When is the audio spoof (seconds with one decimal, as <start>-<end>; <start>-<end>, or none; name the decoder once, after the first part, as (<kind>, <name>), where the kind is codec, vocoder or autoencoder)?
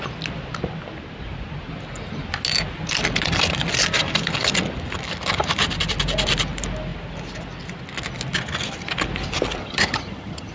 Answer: 9.6-10.5 (vocoder, HiFi-GAN)